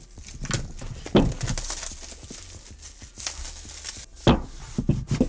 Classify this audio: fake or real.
real